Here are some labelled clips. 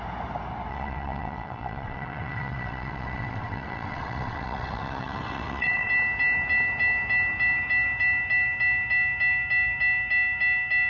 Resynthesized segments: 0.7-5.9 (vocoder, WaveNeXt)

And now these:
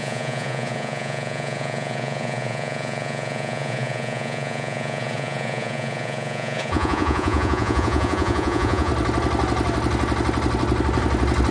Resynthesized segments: 0.0-8.9 (vocoder, Vocos)